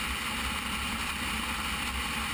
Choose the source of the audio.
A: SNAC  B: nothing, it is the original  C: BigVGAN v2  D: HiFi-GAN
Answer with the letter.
B